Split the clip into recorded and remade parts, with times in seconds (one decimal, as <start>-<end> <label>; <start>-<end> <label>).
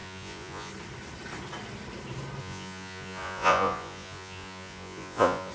0.0-0.7 remade; 0.7-2.4 recorded; 2.4-5.5 remade